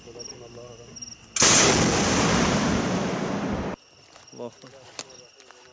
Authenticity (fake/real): real